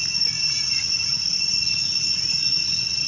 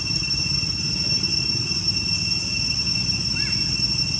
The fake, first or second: first